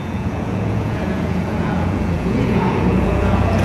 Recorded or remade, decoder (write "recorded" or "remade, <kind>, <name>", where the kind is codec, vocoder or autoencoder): remade, vocoder, Vocos